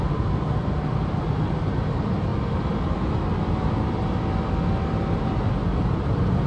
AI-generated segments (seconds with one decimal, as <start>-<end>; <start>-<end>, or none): none